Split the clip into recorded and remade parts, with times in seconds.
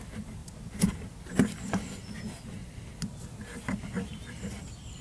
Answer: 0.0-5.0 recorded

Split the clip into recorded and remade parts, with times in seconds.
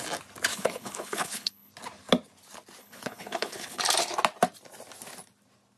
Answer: 0.0-0.5 recorded; 0.5-1.7 remade; 1.7-2.8 recorded; 2.8-3.8 remade; 3.8-5.8 recorded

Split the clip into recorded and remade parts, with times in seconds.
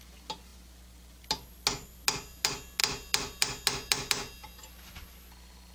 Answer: 0.0-5.7 recorded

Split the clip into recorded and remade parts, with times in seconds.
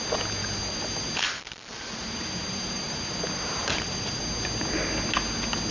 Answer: 0.0-0.4 recorded; 0.4-3.2 remade; 3.2-3.6 recorded; 3.6-4.2 remade; 4.2-5.7 recorded